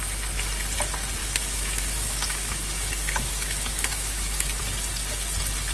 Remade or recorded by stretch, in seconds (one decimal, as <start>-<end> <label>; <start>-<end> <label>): 0.0-1.2 recorded; 1.2-4.6 remade; 4.6-5.7 recorded